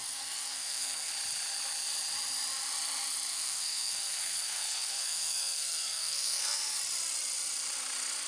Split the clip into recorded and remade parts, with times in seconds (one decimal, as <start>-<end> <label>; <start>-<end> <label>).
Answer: 0.0-1.1 remade; 1.1-3.3 recorded; 3.3-6.8 remade; 6.8-8.3 recorded